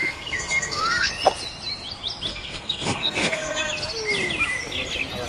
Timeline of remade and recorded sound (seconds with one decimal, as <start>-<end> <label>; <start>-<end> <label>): 0.0-1.1 remade; 1.1-2.3 recorded; 2.3-3.7 remade; 3.7-5.3 recorded